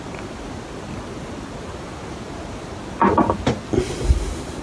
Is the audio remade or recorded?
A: recorded